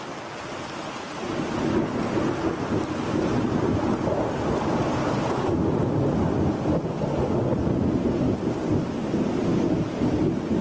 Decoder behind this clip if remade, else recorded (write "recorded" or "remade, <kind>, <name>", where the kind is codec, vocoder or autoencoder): recorded